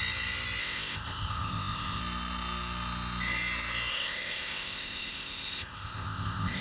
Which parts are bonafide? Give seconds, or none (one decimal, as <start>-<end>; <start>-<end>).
0.0-0.6; 2.0-3.9